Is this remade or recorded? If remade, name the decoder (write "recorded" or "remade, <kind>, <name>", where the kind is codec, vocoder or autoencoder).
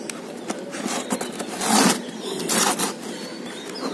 recorded